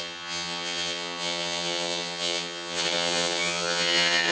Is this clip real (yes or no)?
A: no